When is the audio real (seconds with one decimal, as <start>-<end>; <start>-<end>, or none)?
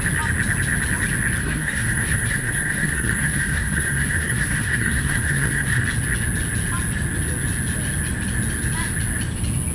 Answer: 0.0-1.4; 5.8-9.7